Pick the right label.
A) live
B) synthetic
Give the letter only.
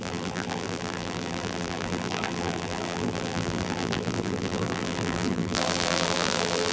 B